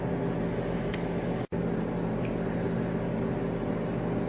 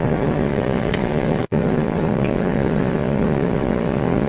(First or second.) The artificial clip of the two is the second